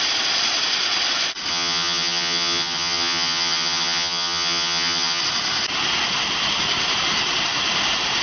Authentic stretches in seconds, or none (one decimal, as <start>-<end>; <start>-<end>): 0.0-1.5; 5.2-8.2